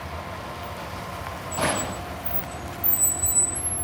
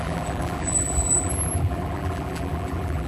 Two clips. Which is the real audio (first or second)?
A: first